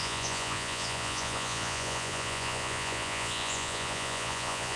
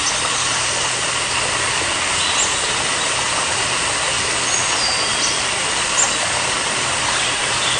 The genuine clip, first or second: second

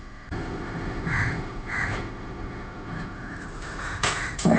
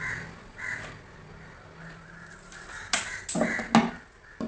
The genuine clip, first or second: second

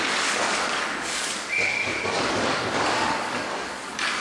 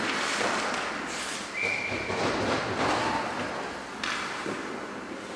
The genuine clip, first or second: second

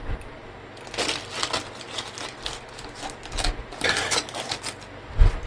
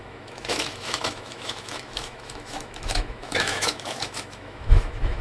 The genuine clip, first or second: first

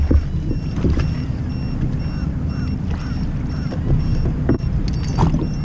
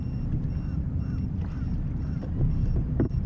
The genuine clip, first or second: first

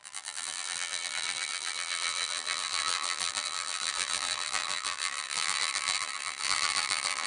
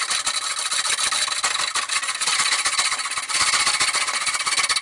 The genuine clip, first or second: second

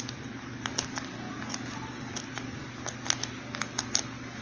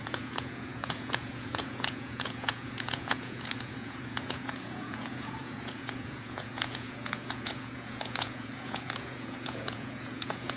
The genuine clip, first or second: first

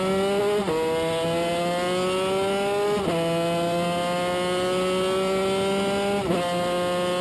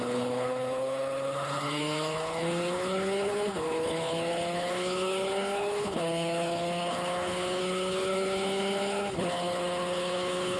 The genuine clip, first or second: first